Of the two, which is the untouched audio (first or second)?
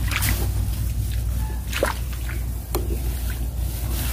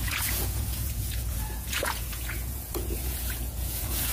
first